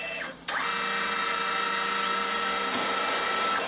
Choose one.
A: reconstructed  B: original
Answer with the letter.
B